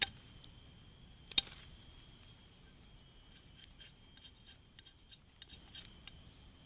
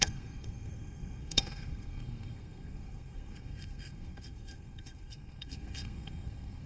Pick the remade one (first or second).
second